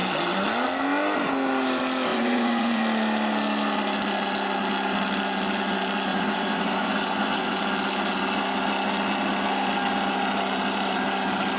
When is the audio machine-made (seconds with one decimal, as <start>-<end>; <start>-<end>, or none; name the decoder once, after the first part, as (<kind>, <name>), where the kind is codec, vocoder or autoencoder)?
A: 2.1-2.8 (vocoder, Vocos); 6.1-7.6